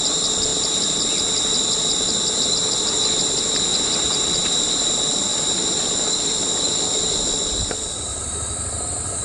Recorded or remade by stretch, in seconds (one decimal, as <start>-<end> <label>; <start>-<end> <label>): 0.0-3.7 recorded; 3.7-4.7 remade; 4.7-8.1 recorded; 8.1-9.2 remade